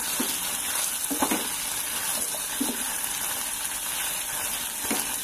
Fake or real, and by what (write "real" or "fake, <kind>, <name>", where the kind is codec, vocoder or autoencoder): real